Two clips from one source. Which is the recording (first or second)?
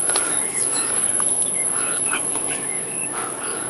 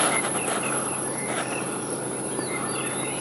second